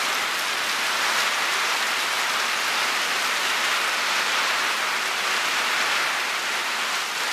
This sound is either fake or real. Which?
real